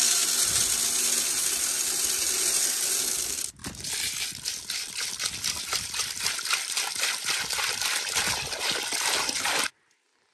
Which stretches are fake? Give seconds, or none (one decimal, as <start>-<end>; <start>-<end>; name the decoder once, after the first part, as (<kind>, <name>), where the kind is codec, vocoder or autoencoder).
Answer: none